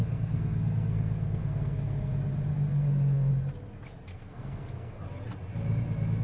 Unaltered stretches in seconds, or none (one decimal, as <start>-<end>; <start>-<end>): 2.1-2.7; 3.3-4.1; 5.0-6.2